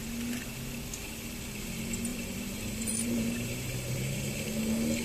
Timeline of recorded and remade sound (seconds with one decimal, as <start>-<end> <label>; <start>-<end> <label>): 0.0-2.1 recorded; 2.1-4.3 remade; 4.3-5.0 recorded